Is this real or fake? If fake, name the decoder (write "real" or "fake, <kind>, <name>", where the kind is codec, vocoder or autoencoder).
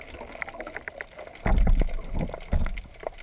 real